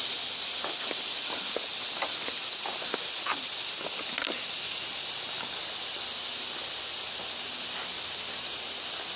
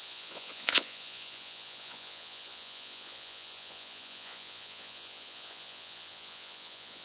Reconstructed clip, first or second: second